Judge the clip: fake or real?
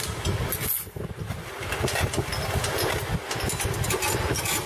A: real